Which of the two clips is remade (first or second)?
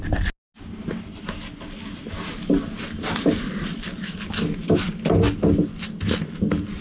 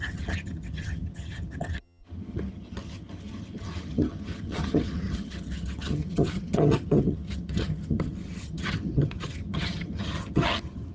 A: second